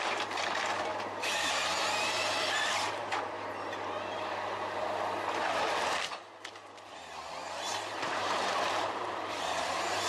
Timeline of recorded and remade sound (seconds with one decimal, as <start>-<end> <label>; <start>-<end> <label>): 0.0-3.0 remade; 3.0-8.0 recorded; 8.0-10.1 remade